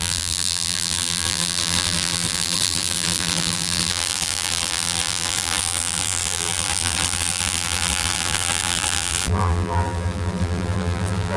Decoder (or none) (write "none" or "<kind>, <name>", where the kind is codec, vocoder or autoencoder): vocoder, BigVGAN v2